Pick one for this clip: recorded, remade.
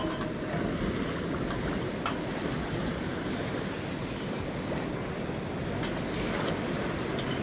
recorded